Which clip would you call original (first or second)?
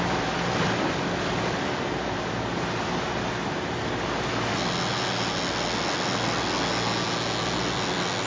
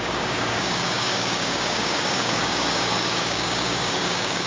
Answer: first